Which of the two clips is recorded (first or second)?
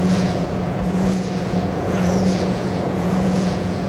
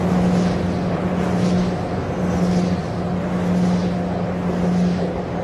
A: second